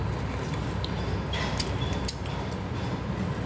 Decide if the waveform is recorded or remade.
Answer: remade